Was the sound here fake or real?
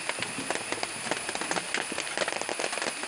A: real